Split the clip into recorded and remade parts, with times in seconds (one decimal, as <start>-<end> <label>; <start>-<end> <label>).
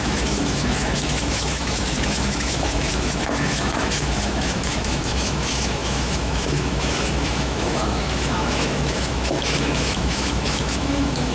0.0-11.3 remade